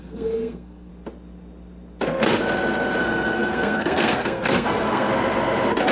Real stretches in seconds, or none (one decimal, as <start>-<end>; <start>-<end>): 0.9-3.0; 5.1-5.9